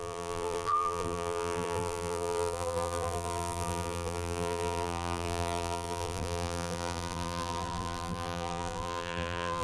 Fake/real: fake